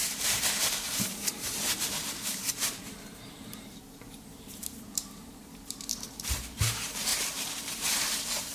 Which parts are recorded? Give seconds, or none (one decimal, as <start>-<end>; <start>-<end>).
none